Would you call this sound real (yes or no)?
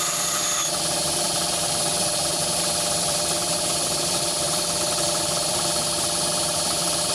no